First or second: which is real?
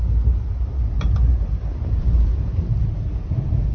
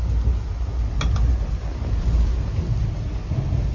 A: second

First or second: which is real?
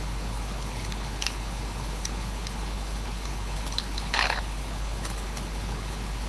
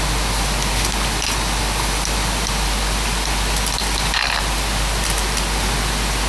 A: second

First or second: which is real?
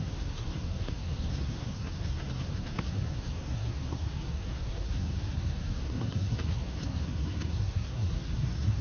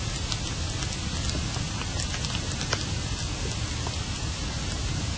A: second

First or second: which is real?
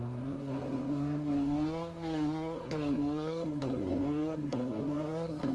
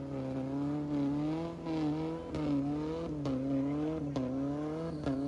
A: second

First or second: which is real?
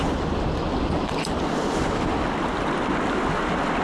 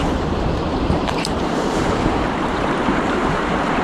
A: first